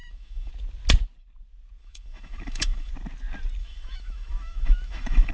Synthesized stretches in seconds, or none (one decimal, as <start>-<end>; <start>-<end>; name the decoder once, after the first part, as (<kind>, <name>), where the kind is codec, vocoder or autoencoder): 0.0-0.5 (autoencoder, DAC-VAE); 1.8-2.9; 3.6-5.3